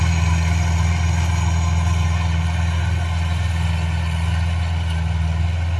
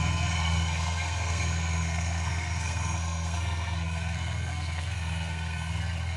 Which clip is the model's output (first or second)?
second